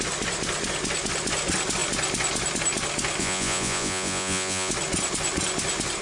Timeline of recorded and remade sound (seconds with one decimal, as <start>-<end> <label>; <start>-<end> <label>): 0.0-3.2 recorded; 3.2-4.7 remade; 4.7-6.0 recorded